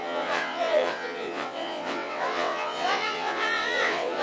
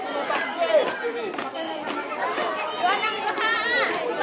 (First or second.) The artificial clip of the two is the first